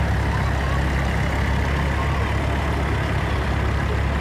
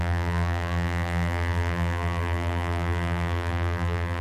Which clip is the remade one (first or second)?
second